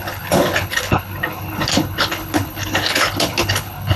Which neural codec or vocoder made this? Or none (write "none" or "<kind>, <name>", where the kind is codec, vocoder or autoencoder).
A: codec, HILCodec